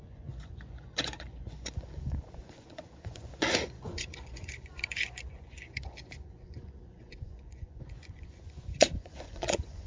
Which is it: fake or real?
fake